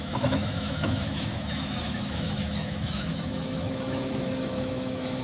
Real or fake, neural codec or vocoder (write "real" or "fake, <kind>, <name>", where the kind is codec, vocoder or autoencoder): fake, autoencoder, DAC-VAE